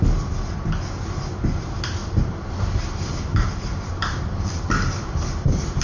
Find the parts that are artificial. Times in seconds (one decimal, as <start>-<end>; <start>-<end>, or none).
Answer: none